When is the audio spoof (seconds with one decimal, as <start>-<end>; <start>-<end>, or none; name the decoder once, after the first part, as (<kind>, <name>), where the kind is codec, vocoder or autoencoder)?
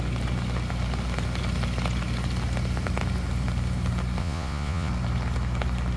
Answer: 4.2-4.9 (vocoder, Vocos)